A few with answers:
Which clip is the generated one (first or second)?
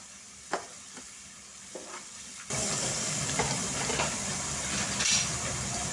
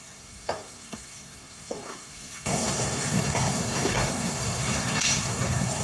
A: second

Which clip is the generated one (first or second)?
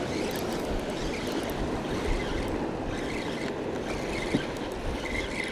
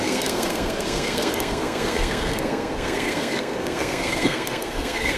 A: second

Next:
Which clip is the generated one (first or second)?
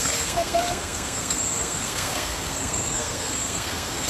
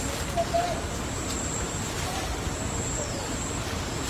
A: first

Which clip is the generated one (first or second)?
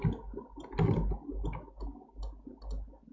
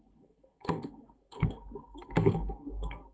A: second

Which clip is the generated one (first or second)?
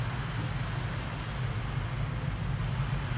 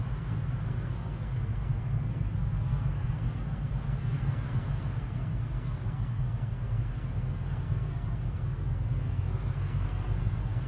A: second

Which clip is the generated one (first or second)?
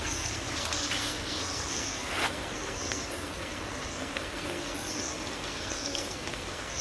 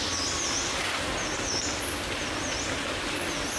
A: first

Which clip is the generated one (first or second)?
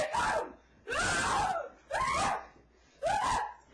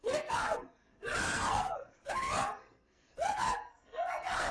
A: second